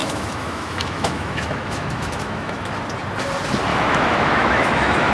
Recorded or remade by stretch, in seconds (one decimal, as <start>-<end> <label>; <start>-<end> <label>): 0.0-2.7 remade; 2.7-3.7 recorded; 3.7-5.1 remade

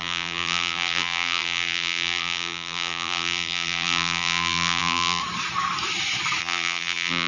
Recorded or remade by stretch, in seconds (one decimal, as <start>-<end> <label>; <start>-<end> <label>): 0.0-5.2 remade; 5.2-6.4 recorded; 6.4-7.3 remade